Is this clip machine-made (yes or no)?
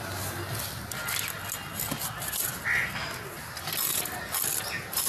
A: no